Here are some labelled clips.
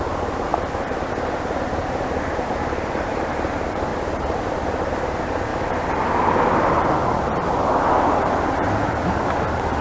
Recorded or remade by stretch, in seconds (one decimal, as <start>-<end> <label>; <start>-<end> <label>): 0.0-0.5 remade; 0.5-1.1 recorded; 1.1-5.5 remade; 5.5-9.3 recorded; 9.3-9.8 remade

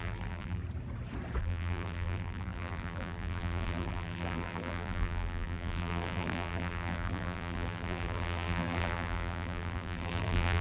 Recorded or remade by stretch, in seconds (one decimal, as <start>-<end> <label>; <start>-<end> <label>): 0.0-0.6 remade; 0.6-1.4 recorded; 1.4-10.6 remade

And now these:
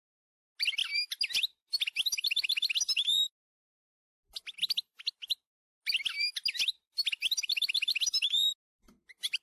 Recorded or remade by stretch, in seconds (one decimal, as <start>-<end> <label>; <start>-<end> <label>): 0.0-9.4 recorded

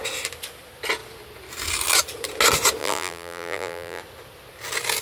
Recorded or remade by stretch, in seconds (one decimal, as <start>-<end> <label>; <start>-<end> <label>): 0.0-2.8 recorded; 2.8-4.0 remade; 4.0-5.0 recorded